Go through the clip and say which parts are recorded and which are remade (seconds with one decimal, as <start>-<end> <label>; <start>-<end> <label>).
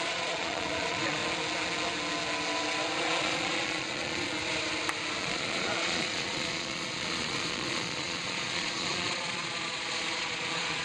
0.0-1.2 remade; 1.2-3.0 recorded; 3.0-4.4 remade; 4.4-5.2 recorded; 5.2-10.8 remade